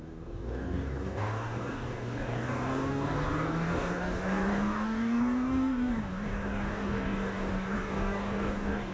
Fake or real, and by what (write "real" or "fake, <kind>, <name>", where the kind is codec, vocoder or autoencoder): fake, codec, DAC